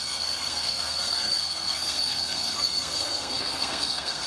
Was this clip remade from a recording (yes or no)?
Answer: yes